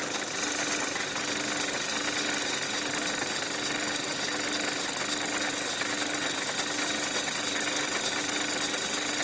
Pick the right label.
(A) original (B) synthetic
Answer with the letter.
A